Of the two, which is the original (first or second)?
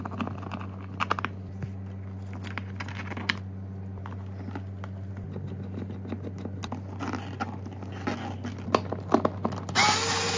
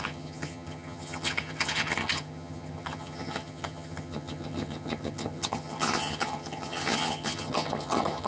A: first